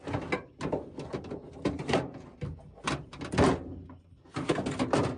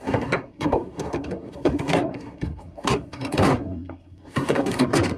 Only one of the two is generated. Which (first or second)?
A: second